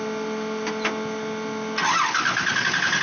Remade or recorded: recorded